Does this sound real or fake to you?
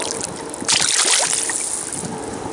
real